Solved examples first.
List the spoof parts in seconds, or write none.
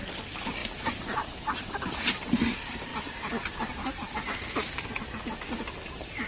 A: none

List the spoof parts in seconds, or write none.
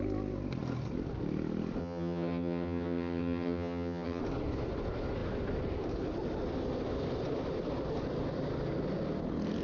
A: 1.8-4.2 (vocoder, HiFi-GAN)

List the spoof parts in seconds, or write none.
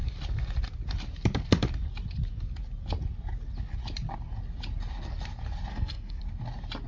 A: 5.7-6.2 (codec, SNAC)